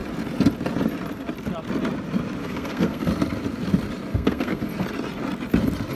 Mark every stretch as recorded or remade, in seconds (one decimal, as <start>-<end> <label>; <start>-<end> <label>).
0.0-2.4 recorded; 2.4-3.1 remade; 3.1-4.1 recorded; 4.1-4.6 remade; 4.6-6.0 recorded